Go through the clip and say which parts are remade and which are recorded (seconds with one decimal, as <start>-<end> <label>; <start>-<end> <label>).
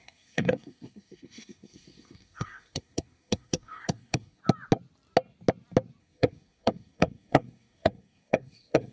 0.0-4.4 remade; 4.4-6.0 recorded; 6.0-8.9 remade